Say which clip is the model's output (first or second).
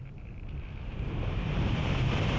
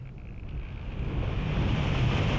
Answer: first